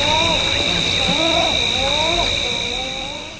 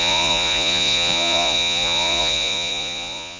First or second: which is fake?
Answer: second